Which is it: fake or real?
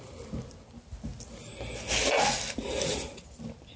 real